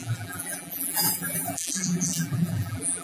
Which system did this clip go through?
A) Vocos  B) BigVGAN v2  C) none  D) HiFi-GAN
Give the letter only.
B